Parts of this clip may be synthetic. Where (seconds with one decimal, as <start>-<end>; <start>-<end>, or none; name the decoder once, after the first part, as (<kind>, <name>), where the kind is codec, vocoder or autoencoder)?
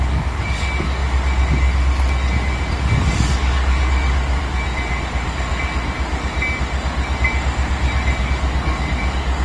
0.0-1.0 (codec, DAC); 2.8-4.4; 8.2-9.4